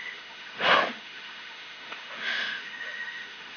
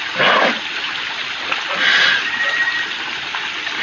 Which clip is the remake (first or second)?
first